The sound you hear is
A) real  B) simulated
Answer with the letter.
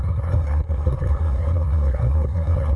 B